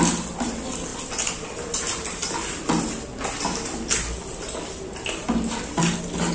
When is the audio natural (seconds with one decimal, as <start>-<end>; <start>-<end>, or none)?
0.0-6.3